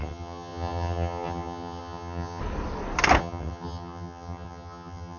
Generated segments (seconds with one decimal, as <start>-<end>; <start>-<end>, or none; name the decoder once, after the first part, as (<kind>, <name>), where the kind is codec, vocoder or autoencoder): 0.0-2.4 (vocoder, HiFi-GAN); 3.2-5.2